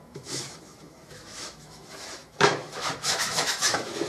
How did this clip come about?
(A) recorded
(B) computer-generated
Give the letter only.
B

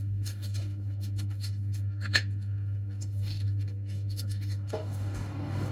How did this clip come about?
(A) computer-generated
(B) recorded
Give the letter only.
A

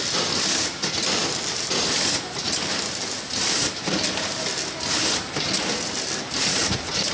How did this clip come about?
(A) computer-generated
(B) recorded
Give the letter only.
B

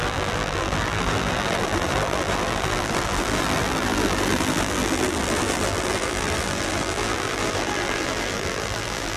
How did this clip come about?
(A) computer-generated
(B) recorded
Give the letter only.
A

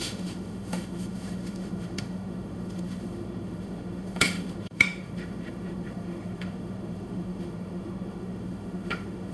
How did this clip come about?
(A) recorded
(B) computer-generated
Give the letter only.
B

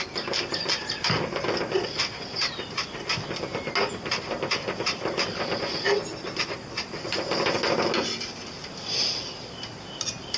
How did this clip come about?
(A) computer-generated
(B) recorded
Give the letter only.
B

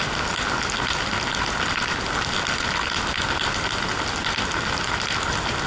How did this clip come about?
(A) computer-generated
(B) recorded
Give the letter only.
B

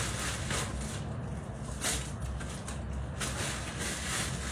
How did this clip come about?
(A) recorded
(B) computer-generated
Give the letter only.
A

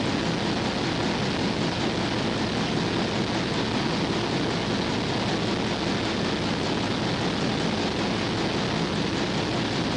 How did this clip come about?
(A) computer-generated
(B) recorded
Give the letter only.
B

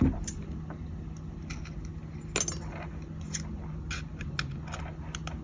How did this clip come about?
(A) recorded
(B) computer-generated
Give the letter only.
A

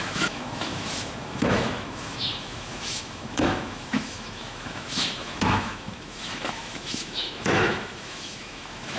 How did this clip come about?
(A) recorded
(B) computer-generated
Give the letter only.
B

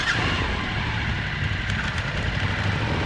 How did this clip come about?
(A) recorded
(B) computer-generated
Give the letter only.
A